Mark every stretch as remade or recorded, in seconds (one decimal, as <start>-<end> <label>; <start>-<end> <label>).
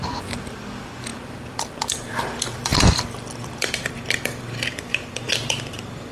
0.0-6.1 remade